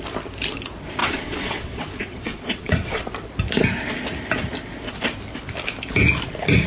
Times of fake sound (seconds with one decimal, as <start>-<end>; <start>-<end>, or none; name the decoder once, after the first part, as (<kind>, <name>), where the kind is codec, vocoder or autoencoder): 1.0-3.0 (vocoder, Vocos)